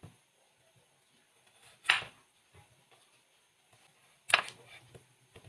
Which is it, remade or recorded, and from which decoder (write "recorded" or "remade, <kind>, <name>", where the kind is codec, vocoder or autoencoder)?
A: recorded